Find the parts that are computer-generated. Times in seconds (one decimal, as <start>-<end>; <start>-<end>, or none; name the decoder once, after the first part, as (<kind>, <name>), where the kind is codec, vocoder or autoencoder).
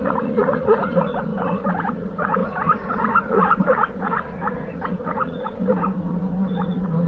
0.0-7.1 (vocoder, Vocos)